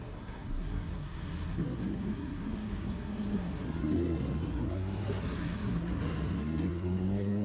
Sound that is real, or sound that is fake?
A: fake